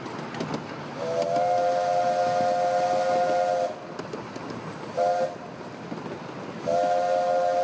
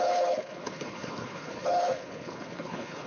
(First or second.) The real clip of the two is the first